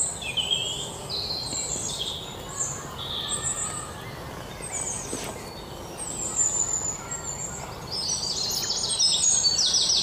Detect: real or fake real